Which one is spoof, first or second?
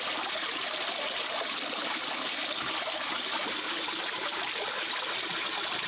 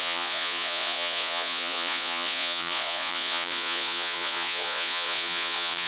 second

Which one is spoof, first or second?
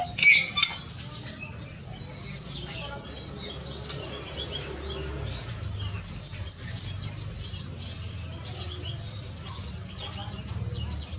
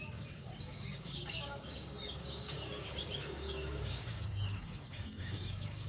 second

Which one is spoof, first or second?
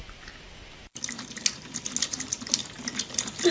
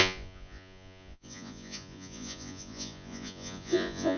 second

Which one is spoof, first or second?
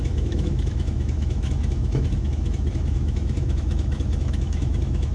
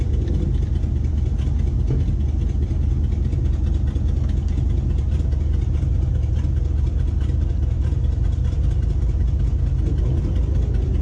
first